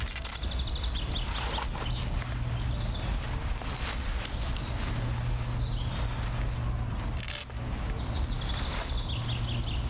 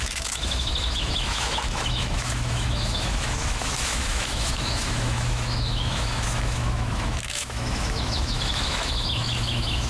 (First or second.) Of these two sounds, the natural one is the first